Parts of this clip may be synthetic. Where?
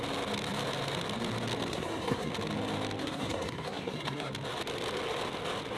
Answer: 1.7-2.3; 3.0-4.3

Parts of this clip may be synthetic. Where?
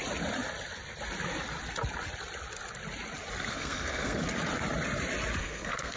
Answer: 3.5-4.2; 5.4-6.0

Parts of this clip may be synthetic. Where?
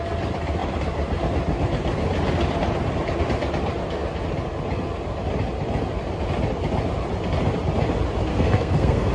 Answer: 8.3-9.1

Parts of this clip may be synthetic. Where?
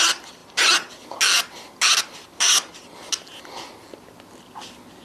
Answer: none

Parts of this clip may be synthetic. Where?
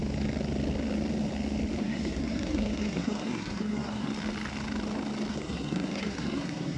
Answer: 1.8-4.1; 5.3-6.8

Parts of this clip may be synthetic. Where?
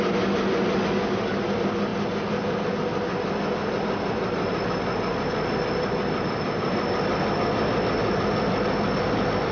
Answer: none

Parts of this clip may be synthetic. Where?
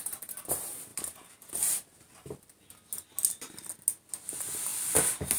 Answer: none